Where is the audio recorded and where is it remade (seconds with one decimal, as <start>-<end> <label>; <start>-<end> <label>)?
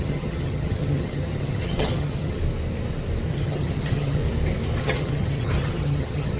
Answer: 0.0-2.4 remade; 2.4-3.3 recorded; 3.3-4.2 remade; 4.2-4.8 recorded; 4.8-6.4 remade